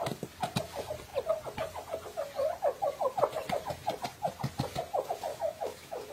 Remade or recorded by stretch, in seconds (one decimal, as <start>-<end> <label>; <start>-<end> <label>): 0.0-5.3 recorded; 5.3-6.1 remade